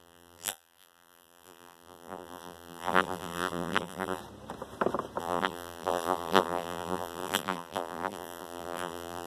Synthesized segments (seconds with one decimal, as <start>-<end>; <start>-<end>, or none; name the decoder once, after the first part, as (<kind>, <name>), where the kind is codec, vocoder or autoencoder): 0.0-4.2 (vocoder, BigVGAN v2); 5.2-9.3